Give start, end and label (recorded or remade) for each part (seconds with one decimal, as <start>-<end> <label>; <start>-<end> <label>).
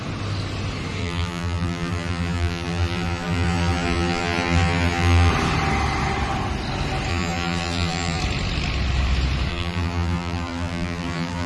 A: 0.0-1.0 recorded; 1.0-5.3 remade; 5.3-7.1 recorded; 7.1-8.2 remade; 8.2-9.5 recorded; 9.5-11.5 remade